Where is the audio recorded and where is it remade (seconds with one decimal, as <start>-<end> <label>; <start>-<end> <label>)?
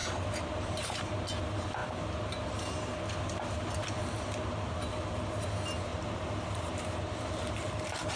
0.0-1.0 remade; 1.0-5.9 recorded; 5.9-7.5 remade; 7.5-8.2 recorded